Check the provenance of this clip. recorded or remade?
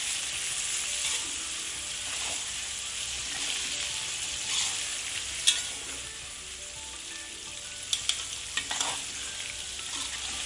recorded